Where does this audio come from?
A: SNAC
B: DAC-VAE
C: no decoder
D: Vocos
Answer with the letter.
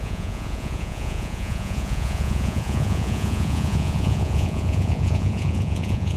D